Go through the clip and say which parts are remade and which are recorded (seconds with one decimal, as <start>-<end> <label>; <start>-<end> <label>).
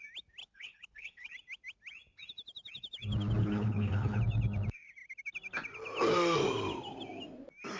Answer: 0.0-0.4 recorded; 0.4-1.3 remade; 1.3-3.4 recorded; 3.4-4.2 remade; 4.2-7.8 recorded